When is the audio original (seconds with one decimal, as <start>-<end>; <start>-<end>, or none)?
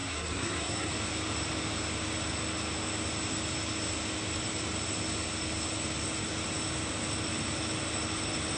0.9-8.6